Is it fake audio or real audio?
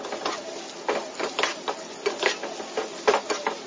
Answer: real